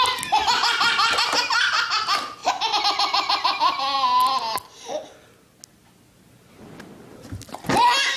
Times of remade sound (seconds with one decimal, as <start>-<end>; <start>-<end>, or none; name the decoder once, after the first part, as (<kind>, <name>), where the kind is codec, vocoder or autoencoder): none